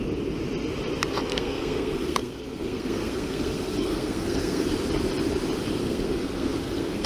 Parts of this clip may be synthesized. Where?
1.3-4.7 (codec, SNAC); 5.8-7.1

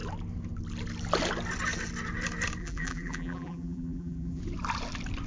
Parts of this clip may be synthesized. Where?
2.6-4.4 (vocoder, BigVGAN v2)